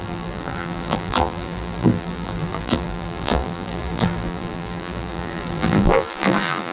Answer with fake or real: fake